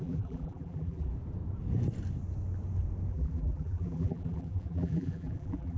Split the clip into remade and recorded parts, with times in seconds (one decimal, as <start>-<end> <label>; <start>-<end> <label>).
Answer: 0.0-1.1 remade; 1.1-3.1 recorded; 3.1-5.8 remade